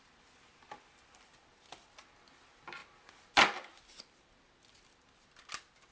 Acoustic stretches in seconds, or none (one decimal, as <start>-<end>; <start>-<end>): 0.0-5.9